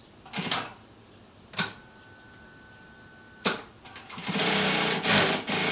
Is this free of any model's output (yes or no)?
yes